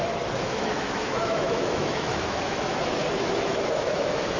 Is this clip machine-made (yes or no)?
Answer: yes